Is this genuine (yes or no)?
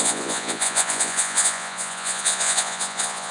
no